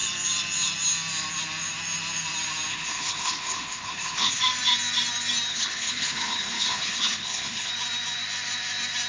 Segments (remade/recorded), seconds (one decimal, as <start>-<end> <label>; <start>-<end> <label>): 0.0-2.7 recorded; 2.7-4.4 remade; 4.4-5.5 recorded; 5.5-7.7 remade; 7.7-9.1 recorded